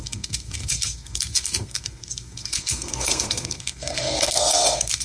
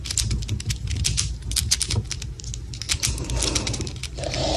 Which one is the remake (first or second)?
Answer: first